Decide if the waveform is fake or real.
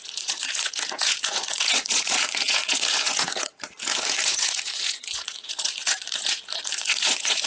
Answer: fake